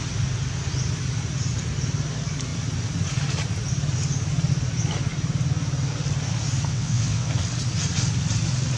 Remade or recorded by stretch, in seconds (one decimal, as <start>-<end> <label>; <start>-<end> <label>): 0.0-6.7 recorded; 6.7-7.3 remade; 7.3-8.8 recorded